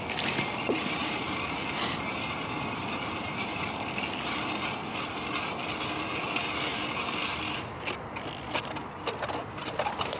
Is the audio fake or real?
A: real